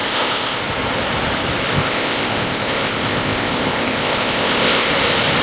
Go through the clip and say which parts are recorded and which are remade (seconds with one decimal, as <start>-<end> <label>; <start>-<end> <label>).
0.0-0.6 remade; 0.6-1.7 recorded; 1.7-4.9 remade; 4.9-5.4 recorded